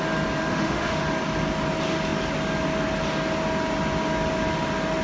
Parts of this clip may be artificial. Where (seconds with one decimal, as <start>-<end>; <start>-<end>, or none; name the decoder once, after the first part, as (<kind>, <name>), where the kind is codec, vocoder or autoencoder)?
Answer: 0.5-1.0 (autoencoder, DAC-VAE)